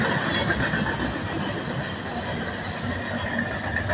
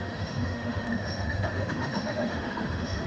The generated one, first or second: second